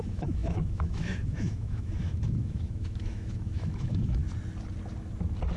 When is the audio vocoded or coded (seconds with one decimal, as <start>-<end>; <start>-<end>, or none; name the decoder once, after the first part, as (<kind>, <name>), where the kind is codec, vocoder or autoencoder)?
0.0-4.2 (autoencoder, DAC-VAE)